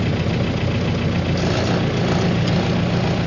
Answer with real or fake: real